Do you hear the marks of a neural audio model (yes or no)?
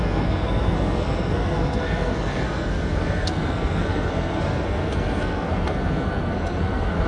yes